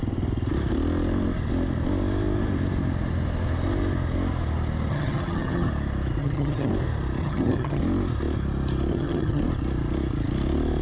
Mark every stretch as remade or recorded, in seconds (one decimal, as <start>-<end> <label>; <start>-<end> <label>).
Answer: 0.0-4.9 recorded; 4.9-5.7 remade; 5.7-6.2 recorded; 6.2-6.7 remade; 6.7-7.2 recorded; 7.2-7.8 remade; 7.8-8.9 recorded; 8.9-9.4 remade; 9.4-10.8 recorded